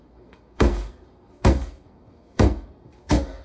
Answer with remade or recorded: remade